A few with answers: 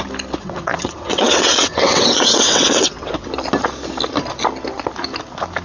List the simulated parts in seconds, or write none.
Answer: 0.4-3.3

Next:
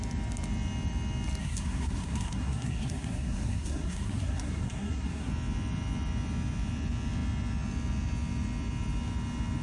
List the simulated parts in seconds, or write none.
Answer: 1.4-5.3

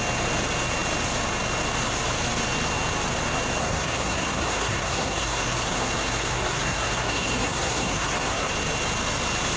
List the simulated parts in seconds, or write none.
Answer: 3.6-8.5

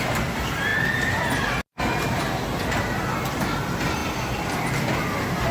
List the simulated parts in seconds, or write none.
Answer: 4.0-4.6

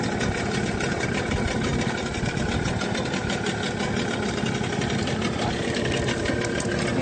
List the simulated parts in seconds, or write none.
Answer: none

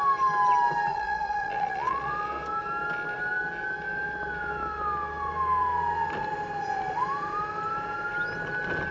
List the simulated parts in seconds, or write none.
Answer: 0.9-2.1

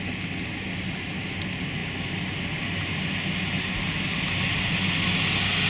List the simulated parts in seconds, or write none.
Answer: none